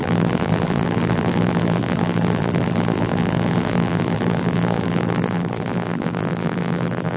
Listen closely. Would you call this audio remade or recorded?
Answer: remade